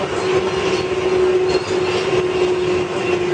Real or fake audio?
real